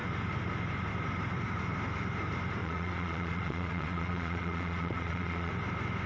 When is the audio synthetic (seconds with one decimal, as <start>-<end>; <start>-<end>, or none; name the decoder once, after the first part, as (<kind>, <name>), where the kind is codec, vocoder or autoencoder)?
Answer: 2.6-5.5 (vocoder, Vocos)